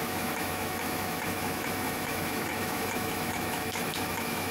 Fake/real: fake